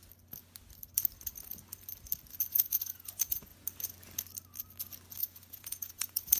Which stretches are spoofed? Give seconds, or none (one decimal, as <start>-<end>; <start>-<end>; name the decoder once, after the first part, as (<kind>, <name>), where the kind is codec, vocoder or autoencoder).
2.5-3.5 (vocoder, Vocos); 5.2-6.4